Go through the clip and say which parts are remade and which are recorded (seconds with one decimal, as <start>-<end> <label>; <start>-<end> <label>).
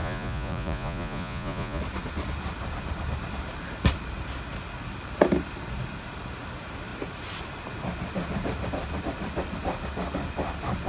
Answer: 0.0-1.8 remade; 1.8-10.9 recorded